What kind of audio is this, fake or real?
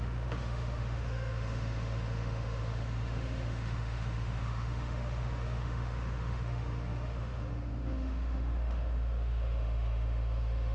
fake